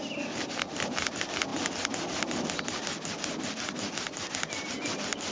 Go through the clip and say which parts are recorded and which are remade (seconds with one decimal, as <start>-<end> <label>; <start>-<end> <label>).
0.0-5.3 recorded